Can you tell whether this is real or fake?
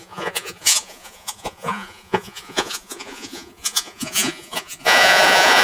fake